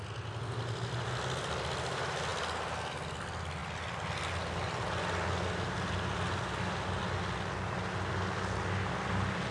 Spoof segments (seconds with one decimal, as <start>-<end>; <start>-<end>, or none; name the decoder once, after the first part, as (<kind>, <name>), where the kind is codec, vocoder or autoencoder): none